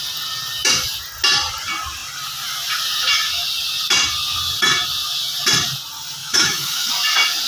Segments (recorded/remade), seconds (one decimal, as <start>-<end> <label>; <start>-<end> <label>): 0.0-6.2 recorded; 6.2-6.9 remade; 6.9-7.5 recorded